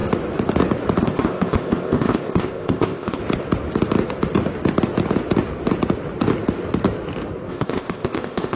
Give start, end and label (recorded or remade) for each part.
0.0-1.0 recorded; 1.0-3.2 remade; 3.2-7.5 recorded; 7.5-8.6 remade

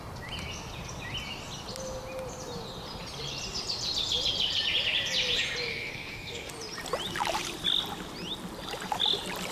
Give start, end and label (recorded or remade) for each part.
0.0-5.7 recorded; 5.7-6.5 remade; 6.5-9.5 recorded

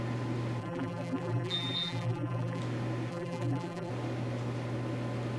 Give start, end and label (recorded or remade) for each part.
0.0-0.6 recorded; 0.6-2.6 remade; 2.6-3.1 recorded; 3.1-3.9 remade; 3.9-5.4 recorded